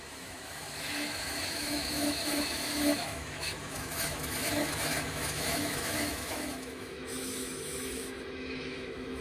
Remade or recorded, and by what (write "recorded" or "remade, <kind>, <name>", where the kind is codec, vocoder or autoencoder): remade, autoencoder, DAC-VAE